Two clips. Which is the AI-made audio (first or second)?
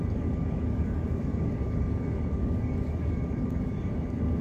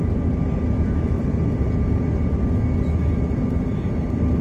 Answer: first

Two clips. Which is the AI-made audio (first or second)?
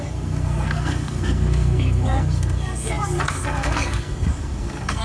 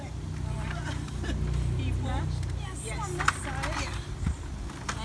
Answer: first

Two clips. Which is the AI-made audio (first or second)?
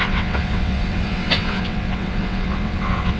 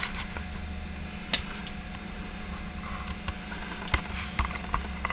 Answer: first